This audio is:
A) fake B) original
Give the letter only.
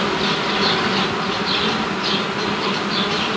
B